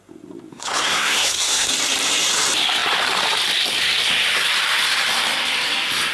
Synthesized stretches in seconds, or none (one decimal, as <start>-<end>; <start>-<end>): 0.5-1.7